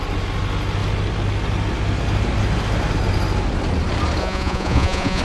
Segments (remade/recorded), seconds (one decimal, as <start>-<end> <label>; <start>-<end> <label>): 0.0-4.2 recorded; 4.2-5.2 remade